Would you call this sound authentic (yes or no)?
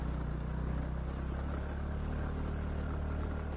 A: yes